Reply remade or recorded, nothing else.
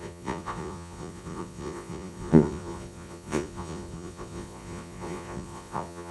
remade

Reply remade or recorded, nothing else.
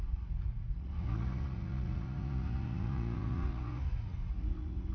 remade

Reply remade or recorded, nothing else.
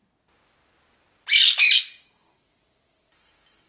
recorded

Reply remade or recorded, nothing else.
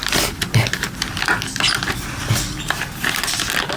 recorded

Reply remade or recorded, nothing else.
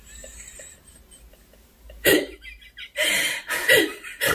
recorded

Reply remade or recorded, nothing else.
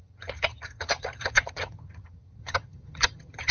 remade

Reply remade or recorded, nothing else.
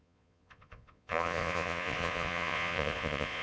remade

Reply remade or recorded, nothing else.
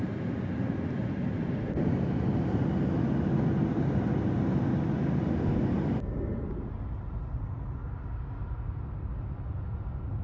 recorded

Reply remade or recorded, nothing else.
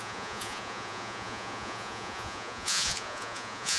remade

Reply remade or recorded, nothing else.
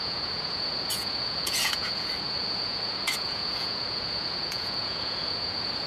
remade